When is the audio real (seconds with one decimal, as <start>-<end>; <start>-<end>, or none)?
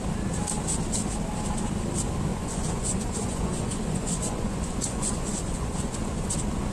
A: 0.0-2.3; 6.3-6.7